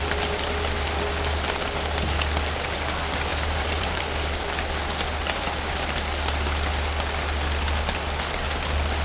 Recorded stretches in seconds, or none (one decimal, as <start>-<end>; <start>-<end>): 0.0-3.3; 4.0-9.0